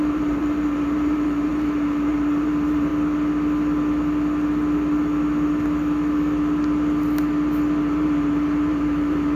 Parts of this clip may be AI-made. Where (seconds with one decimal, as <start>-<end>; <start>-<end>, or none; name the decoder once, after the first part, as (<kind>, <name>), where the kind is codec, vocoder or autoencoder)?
0.0-2.9 (vocoder, BigVGAN v2); 7.8-9.4